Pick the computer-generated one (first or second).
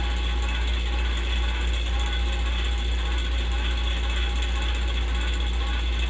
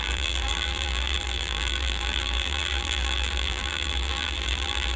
second